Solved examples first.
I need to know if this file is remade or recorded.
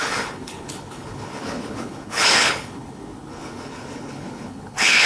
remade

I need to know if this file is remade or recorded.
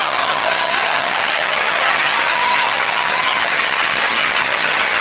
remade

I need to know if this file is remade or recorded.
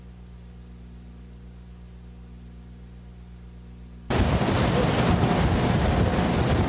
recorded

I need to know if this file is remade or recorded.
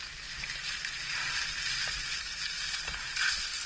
recorded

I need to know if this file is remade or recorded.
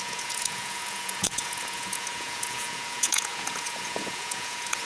remade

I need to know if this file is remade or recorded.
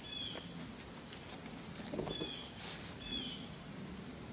recorded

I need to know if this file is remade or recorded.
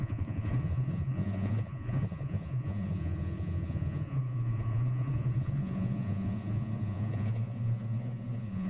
remade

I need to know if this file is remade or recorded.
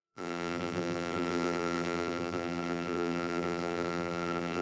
remade